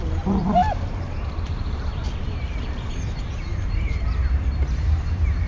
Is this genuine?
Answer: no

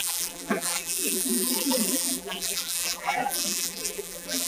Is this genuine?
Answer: no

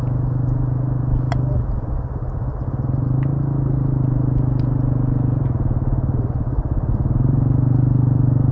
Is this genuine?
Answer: yes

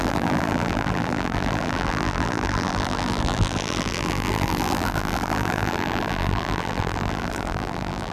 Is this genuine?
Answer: no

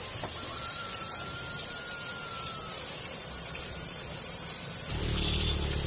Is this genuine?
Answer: no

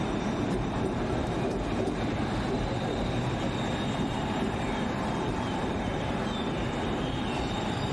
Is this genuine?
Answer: no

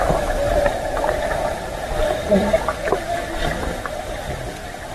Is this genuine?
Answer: yes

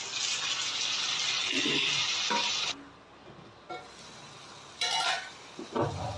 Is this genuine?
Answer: yes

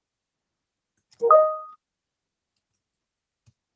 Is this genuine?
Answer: yes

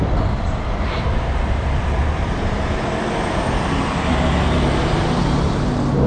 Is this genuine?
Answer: yes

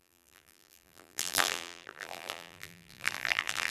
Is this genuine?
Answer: no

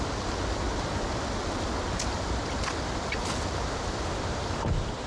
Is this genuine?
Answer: yes